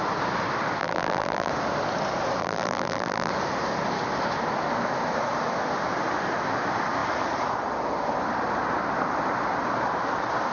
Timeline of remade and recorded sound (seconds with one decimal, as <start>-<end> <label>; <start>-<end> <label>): 0.0-0.8 recorded; 0.8-1.5 remade; 1.5-2.4 recorded; 2.4-3.3 remade; 3.3-10.5 recorded